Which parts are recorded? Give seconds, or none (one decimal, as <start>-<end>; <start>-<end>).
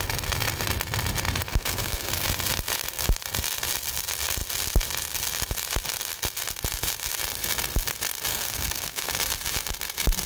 0.0-1.5; 2.1-8.3; 9.1-10.3